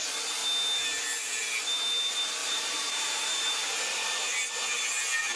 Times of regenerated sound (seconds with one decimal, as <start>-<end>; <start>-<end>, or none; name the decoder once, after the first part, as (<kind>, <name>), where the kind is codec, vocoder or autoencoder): 2.4-4.3 (vocoder, BigVGAN v2)